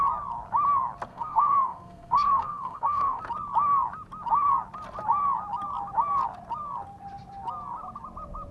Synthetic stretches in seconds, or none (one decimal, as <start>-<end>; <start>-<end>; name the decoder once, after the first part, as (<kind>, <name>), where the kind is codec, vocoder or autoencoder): 1.1-3.2 (codec, SNAC)